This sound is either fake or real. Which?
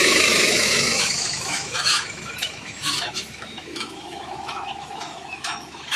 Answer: fake